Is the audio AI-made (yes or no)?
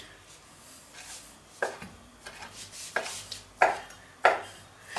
no